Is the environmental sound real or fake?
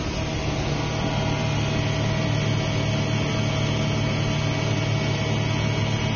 real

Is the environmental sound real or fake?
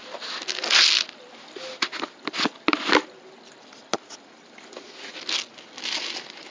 real